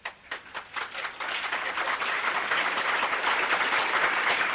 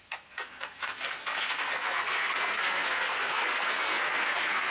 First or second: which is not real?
second